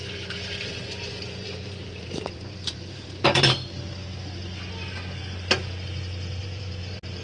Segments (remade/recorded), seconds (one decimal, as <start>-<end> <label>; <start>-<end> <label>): 0.0-3.4 remade; 3.4-6.4 recorded; 6.4-7.2 remade